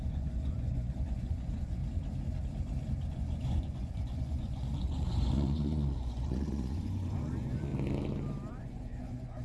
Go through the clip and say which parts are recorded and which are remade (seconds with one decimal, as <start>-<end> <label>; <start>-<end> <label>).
0.0-1.8 remade; 1.8-3.1 recorded; 3.1-7.7 remade; 7.7-8.5 recorded; 8.5-9.4 remade